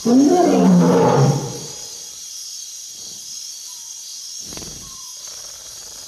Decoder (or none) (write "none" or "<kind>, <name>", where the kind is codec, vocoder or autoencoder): vocoder, BigVGAN v2